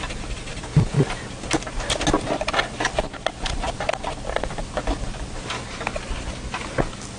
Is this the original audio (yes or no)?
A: yes